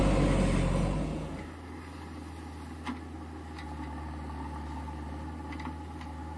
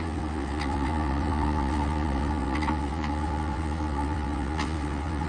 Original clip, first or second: first